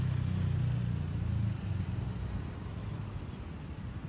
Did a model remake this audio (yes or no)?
no